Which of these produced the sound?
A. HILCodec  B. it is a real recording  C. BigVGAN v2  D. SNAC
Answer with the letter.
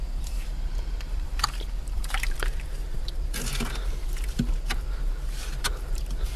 C